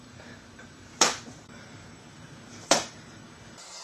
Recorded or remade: remade